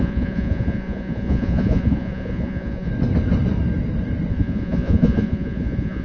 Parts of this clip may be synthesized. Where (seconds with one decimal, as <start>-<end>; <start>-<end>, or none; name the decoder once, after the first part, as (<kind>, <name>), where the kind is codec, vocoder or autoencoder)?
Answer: 0.0-2.9 (vocoder, Vocos); 4.3-6.0